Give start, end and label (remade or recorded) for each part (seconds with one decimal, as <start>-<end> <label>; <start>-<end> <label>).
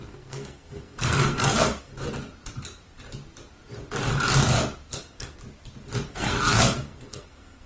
0.0-1.9 remade; 1.9-4.9 recorded; 4.9-5.4 remade; 5.4-6.1 recorded; 6.1-7.7 remade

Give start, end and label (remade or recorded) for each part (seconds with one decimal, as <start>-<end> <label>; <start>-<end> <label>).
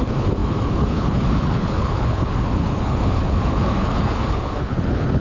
0.0-5.2 remade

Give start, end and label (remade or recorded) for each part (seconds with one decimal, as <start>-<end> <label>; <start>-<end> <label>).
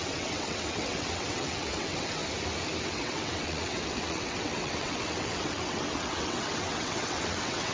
0.0-2.2 remade; 2.2-2.8 recorded; 2.8-7.7 remade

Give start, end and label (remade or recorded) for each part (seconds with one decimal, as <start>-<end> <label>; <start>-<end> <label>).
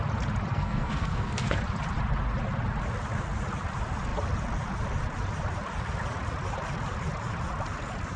0.0-0.5 recorded; 0.5-1.6 remade; 1.6-8.2 recorded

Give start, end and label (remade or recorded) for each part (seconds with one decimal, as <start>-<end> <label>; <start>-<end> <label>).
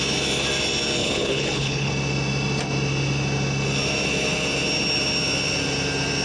0.0-1.0 recorded; 1.0-1.9 remade; 1.9-6.2 recorded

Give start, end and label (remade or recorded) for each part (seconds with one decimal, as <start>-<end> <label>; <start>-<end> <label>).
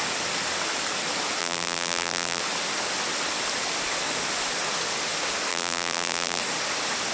0.0-1.4 recorded; 1.4-2.4 remade; 2.4-5.5 recorded; 5.5-6.4 remade; 6.4-7.1 recorded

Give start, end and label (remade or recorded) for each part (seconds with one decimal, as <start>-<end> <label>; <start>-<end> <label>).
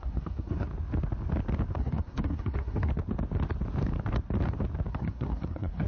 0.0-0.7 remade; 0.7-1.8 recorded; 1.8-2.9 remade; 2.9-4.9 recorded; 4.9-5.9 remade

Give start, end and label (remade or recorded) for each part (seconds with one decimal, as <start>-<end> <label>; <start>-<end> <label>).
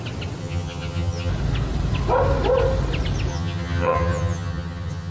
0.0-0.4 recorded; 0.4-1.3 remade; 1.3-3.3 recorded; 3.3-5.1 remade